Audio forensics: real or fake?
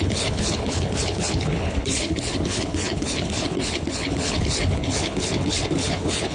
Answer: fake